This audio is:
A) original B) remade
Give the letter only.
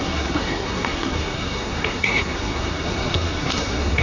B